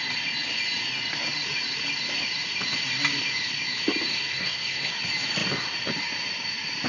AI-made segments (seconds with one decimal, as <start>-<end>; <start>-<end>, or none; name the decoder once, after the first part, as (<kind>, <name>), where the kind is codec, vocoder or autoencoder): 4.1-5.0 (codec, SNAC)